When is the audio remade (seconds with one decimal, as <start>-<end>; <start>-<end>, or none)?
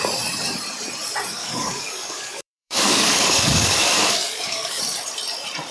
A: 1.4-4.8